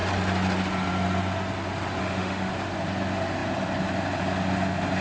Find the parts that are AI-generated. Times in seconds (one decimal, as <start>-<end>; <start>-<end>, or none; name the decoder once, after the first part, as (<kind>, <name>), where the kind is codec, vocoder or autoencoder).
2.0-2.5 (autoencoder, DAC-VAE)